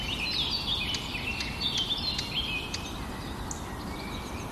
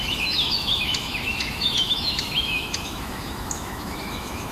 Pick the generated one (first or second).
second